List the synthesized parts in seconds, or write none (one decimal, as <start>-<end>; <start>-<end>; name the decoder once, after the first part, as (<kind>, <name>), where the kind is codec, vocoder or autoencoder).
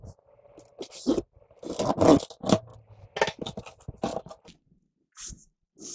4.1-5.3 (vocoder, BigVGAN v2)